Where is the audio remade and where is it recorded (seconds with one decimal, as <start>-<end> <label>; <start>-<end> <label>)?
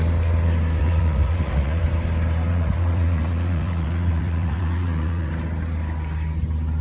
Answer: 0.0-0.8 recorded; 0.8-1.8 remade; 1.8-2.5 recorded; 2.5-5.3 remade; 5.3-6.8 recorded